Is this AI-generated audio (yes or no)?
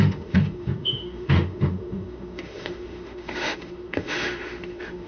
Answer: yes